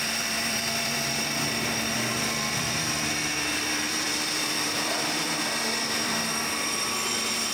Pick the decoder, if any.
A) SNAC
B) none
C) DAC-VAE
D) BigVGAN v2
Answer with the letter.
D